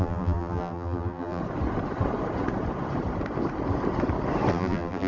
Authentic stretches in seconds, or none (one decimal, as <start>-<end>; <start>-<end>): 1.4-4.5